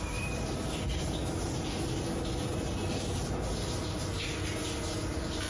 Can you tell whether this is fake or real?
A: real